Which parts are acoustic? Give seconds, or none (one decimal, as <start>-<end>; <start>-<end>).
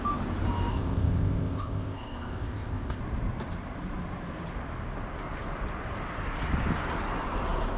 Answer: 0.0-0.7; 3.0-7.8